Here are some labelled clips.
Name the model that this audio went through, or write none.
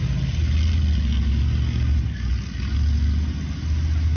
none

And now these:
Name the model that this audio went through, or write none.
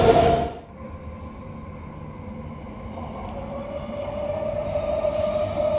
none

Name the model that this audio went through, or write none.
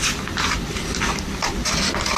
none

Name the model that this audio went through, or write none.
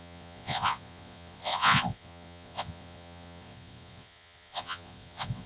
vocoder, Vocos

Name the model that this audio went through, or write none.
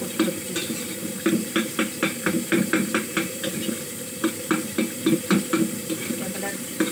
vocoder, BigVGAN v2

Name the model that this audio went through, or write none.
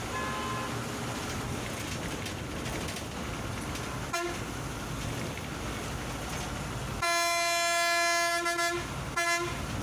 none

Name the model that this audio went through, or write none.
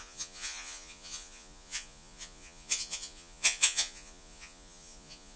vocoder, Vocos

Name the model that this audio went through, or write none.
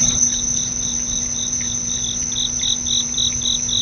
none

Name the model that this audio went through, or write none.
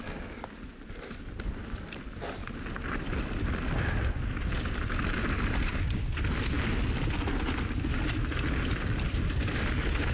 none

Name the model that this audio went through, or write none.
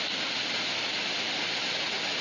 none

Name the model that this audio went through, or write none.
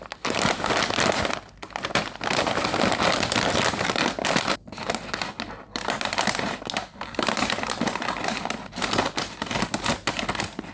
none